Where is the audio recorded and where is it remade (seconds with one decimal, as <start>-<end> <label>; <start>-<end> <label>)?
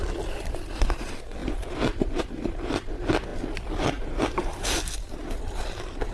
0.0-6.1 recorded